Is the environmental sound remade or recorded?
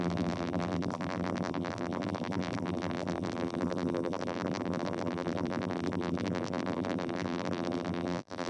remade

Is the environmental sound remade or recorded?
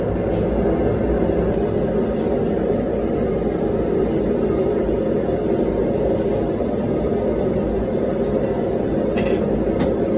recorded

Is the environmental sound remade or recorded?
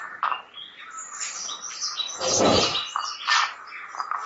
recorded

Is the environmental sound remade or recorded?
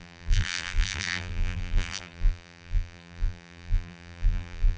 remade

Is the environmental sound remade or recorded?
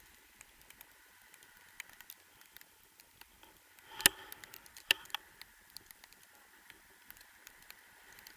recorded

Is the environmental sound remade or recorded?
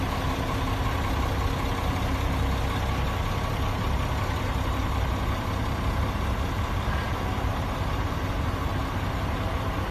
recorded